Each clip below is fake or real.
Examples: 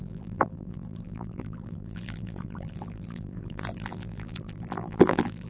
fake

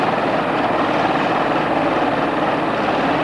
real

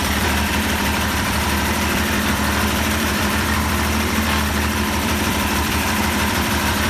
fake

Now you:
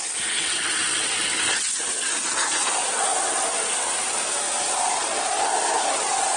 real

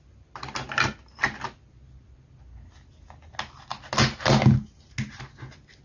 real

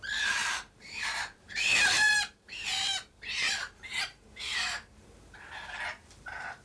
fake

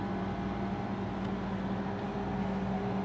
real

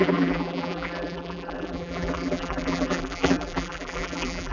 fake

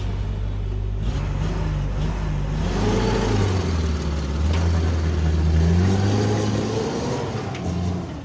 real